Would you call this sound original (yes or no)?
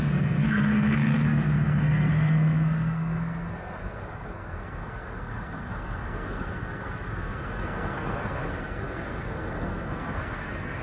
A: no